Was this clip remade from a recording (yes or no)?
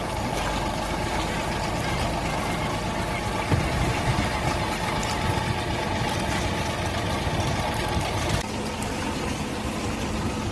no